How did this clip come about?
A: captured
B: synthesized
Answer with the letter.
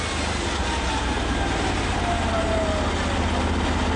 A